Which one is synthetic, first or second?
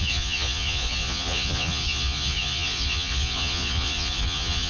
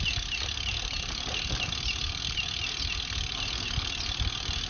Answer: first